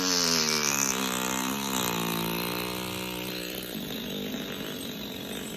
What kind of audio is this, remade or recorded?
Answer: recorded